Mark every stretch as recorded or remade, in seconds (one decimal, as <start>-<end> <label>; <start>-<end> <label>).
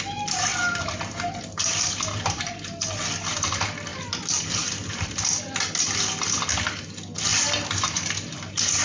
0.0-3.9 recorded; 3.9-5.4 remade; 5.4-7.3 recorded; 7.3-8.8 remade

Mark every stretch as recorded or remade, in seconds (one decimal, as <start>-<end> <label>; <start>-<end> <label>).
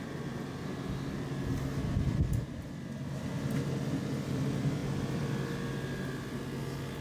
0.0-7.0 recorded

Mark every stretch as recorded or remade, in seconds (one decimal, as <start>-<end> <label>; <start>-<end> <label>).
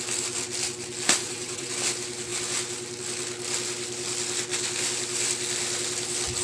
0.0-1.2 recorded; 1.2-1.7 remade; 1.7-6.4 recorded